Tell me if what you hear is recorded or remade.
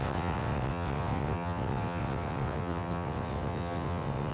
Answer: remade